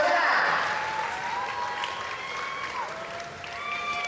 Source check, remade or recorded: recorded